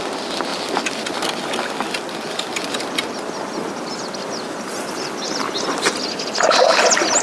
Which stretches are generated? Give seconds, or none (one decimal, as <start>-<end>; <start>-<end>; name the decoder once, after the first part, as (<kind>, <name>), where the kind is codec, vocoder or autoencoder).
none